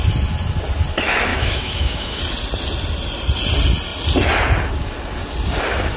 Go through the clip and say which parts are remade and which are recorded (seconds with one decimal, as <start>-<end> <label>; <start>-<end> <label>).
0.0-1.3 recorded; 1.3-2.2 remade; 2.2-6.0 recorded